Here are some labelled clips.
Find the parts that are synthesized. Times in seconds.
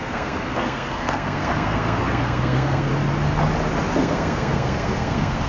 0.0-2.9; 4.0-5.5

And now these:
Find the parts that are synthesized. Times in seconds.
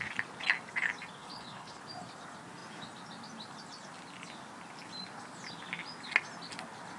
1.2-1.8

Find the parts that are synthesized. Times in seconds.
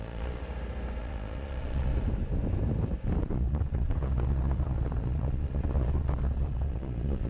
0.0-0.4; 1.0-1.9; 3.2-7.3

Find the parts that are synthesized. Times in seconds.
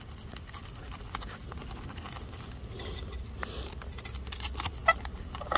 none